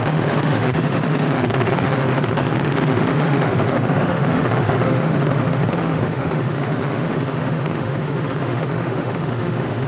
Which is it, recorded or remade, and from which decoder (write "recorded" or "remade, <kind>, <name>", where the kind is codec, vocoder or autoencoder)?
remade, autoencoder, DAC-VAE